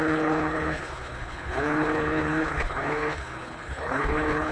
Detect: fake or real fake